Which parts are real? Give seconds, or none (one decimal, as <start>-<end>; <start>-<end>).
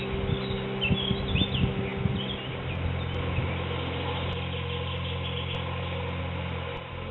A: 0.0-7.1